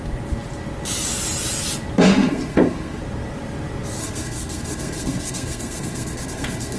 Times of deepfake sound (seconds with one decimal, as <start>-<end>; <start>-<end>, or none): 2.2-3.0; 4.0-6.8